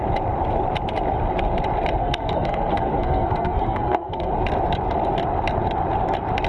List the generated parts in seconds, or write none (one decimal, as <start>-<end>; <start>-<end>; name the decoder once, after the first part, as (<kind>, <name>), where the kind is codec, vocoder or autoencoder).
2.0-4.3 (codec, SNAC)